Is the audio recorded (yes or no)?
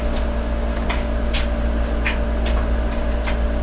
yes